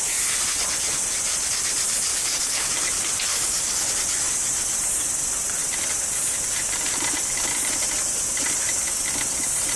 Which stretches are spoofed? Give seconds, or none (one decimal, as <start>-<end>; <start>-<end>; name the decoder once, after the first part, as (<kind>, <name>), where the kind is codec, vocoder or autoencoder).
2.1-2.7 (codec, DAC); 3.3-3.9